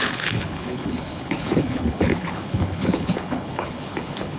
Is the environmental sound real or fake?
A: fake